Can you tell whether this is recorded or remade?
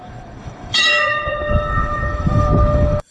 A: remade